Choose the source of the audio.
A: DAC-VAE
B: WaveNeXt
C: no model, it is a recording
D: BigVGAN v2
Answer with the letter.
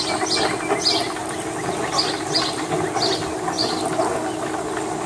C